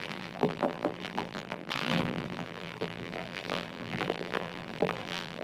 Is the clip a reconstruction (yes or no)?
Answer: yes